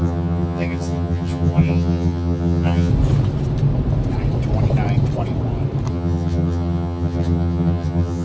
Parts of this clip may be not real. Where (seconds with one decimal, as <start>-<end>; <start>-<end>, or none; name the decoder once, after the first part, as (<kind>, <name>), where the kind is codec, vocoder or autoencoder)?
0.0-2.9 (vocoder, HiFi-GAN); 5.9-8.2